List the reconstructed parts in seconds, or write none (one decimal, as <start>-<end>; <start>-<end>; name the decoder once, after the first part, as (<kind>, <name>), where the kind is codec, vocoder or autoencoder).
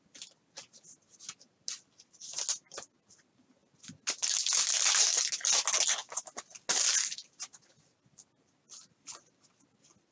none